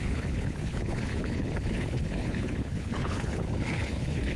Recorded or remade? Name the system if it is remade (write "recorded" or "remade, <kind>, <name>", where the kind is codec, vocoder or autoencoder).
remade, codec, HILCodec